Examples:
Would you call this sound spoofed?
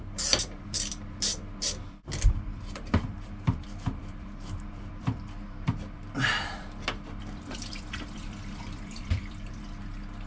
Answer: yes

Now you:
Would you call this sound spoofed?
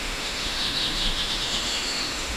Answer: yes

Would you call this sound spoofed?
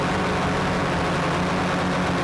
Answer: no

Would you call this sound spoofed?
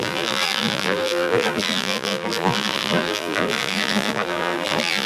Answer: yes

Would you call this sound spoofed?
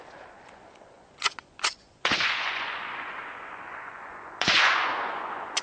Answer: yes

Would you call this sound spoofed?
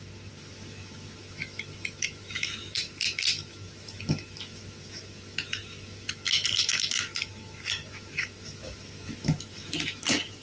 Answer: yes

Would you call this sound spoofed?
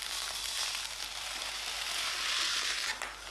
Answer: no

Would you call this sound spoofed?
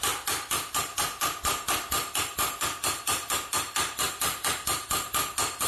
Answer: no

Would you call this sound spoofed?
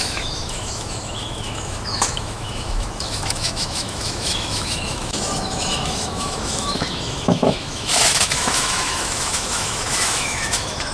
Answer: yes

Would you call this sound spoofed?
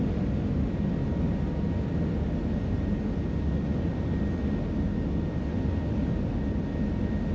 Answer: no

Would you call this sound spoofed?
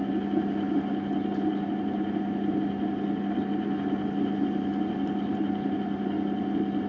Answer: no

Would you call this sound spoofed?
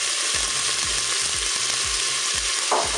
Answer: no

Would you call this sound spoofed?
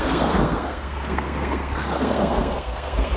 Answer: yes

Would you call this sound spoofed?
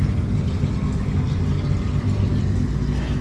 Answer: no